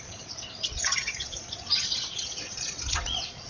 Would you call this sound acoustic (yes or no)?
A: no